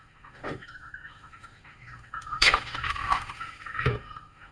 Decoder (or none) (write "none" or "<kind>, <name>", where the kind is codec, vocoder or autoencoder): autoencoder, DAC-VAE